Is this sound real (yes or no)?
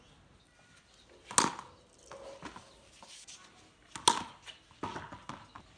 yes